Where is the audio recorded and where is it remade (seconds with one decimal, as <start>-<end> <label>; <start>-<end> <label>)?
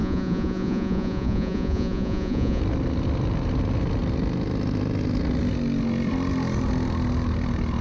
0.0-2.6 remade; 2.6-7.8 recorded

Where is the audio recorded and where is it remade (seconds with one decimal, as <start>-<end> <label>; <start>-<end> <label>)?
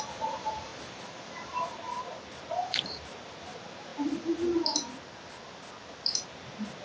0.0-0.7 remade; 0.7-2.6 recorded; 2.6-3.9 remade; 3.9-6.8 recorded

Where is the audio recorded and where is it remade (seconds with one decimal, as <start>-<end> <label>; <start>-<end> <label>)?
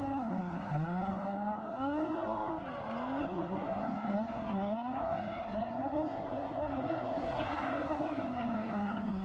0.0-2.5 remade; 2.5-3.2 recorded; 3.2-9.2 remade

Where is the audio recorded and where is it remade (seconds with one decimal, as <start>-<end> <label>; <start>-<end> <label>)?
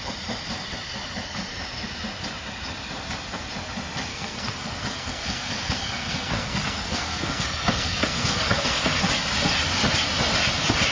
0.0-4.1 recorded; 4.1-9.1 remade; 9.1-10.9 recorded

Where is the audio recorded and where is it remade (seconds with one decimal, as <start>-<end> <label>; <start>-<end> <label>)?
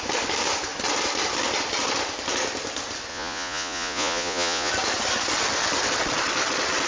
0.0-3.1 recorded; 3.1-4.7 remade; 4.7-6.9 recorded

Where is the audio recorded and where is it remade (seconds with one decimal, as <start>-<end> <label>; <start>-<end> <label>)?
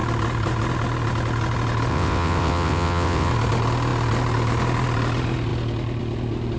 0.0-1.9 recorded; 1.9-3.3 remade; 3.3-6.6 recorded